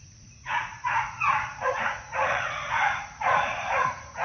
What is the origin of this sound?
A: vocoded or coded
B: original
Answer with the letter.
A